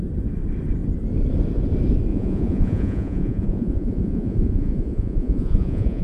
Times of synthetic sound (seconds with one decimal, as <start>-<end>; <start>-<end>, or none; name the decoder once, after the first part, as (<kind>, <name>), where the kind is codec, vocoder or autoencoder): 2.1-6.0 (vocoder, Vocos)